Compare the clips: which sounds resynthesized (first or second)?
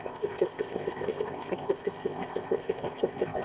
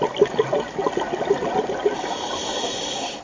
first